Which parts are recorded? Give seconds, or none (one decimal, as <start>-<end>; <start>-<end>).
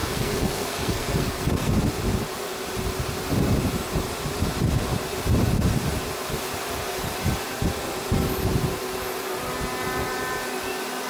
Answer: 1.7-11.1